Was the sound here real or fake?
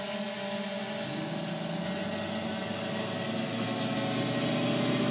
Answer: real